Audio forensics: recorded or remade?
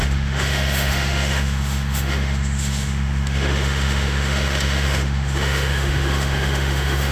remade